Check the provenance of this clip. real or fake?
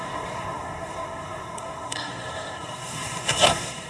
fake